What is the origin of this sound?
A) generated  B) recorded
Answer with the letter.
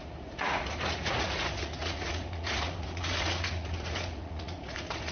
A